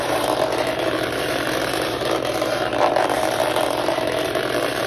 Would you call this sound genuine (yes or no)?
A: no